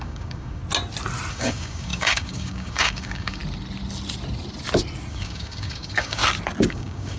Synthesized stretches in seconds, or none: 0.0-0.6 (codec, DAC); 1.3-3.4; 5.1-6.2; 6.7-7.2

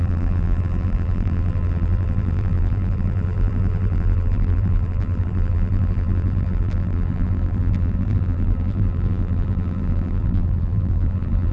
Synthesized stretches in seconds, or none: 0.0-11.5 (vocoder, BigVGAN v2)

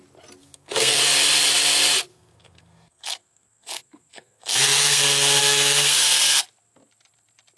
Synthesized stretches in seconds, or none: 0.4-1.0 (codec, SNAC); 2.1-5.0; 5.4-6.4

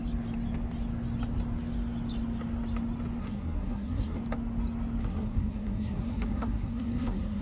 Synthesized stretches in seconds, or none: 3.2-4.2 (codec, SNAC); 5.0-7.4

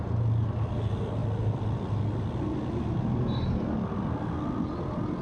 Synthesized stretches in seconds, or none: none

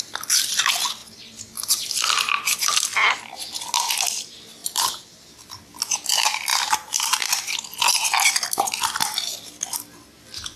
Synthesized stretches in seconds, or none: 4.6-5.8 (vocoder, BigVGAN v2); 6.5-7.4

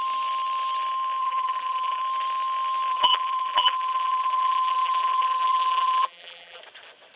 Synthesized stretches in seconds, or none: 1.2-2.0 (vocoder, BigVGAN v2); 2.9-6.6

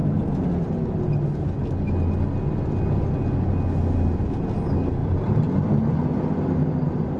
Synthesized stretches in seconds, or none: 5.0-6.0 (vocoder, BigVGAN v2)